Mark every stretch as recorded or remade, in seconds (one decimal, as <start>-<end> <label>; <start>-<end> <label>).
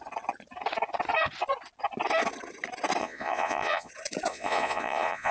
0.0-3.0 recorded; 3.0-3.9 remade; 3.9-4.3 recorded; 4.3-5.3 remade